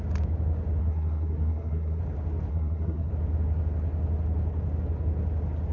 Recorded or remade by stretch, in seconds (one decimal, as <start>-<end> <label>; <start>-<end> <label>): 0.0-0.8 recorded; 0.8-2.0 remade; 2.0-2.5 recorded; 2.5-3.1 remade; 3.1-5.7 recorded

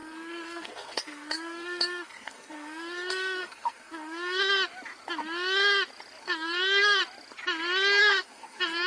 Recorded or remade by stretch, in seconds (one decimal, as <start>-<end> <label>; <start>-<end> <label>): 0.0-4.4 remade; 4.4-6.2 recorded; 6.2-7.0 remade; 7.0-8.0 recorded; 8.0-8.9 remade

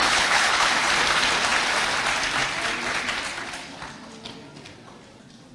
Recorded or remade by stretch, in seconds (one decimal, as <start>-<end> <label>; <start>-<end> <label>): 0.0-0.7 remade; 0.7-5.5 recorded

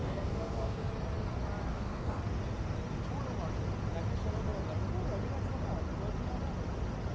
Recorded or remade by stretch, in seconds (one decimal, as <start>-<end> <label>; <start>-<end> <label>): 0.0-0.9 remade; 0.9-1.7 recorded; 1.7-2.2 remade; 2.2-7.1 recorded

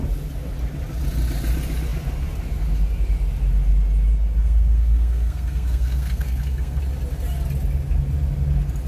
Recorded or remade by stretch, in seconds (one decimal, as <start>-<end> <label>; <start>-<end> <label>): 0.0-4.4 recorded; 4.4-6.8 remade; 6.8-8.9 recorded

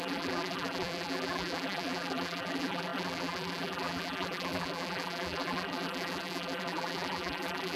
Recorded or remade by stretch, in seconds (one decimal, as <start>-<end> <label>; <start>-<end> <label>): 0.0-7.8 remade